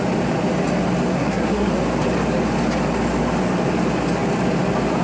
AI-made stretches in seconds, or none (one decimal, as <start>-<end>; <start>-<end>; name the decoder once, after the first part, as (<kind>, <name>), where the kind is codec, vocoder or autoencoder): 1.1-1.7 (codec, SNAC)